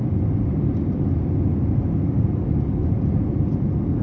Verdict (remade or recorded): recorded